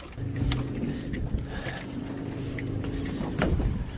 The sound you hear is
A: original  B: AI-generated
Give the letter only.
A